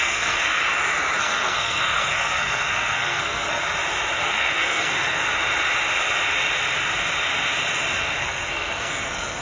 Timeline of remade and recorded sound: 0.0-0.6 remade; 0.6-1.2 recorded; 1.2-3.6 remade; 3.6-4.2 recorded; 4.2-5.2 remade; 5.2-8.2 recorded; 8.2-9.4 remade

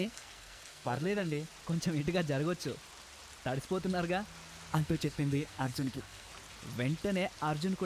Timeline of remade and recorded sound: 0.0-1.5 remade; 1.5-4.7 recorded; 4.7-6.3 remade; 6.3-7.9 recorded

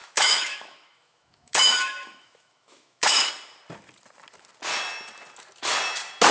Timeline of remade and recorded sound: 0.0-3.3 remade; 3.3-6.3 recorded